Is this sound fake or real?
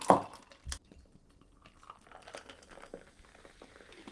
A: real